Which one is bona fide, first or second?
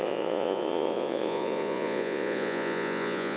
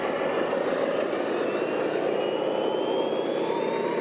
second